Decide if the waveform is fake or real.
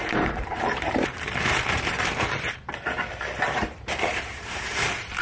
fake